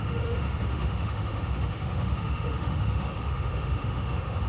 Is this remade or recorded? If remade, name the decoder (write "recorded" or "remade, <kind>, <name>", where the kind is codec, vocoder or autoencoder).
remade, autoencoder, DAC-VAE